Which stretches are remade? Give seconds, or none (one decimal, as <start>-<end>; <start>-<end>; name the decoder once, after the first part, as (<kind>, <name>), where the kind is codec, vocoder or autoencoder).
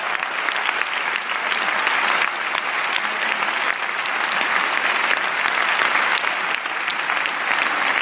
none